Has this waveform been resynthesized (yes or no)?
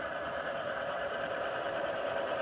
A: yes